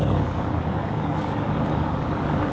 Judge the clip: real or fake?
fake